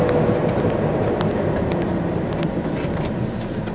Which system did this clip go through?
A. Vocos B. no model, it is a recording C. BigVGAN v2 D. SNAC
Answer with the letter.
B